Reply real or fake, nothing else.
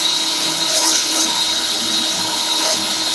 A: fake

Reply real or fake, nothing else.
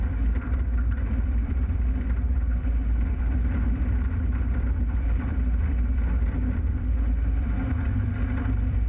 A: fake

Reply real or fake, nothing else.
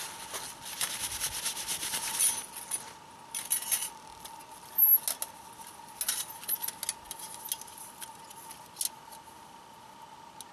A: real